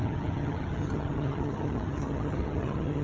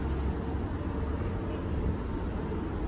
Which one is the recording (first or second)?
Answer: second